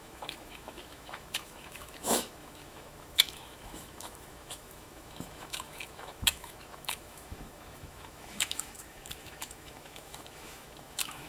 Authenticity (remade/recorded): remade